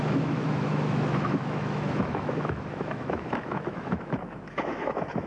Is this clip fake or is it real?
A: fake